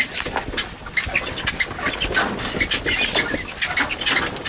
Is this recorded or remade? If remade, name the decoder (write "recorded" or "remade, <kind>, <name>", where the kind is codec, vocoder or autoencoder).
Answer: recorded